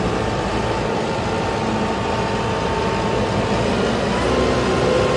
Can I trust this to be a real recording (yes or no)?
yes